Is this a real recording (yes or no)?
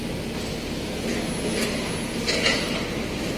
yes